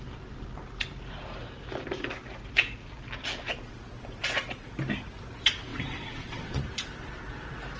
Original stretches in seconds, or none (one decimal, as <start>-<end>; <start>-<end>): 0.0-5.7; 6.6-7.8